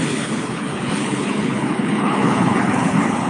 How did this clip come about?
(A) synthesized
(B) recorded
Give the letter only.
A